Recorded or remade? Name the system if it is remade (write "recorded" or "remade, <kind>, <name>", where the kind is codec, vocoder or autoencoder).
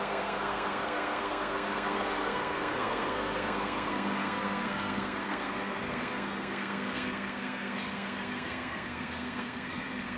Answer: remade, codec, SNAC